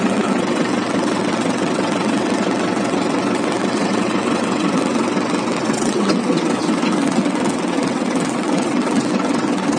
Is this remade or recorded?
remade